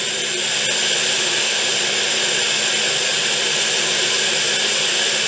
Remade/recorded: recorded